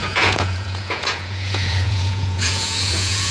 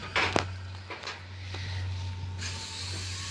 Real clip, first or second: second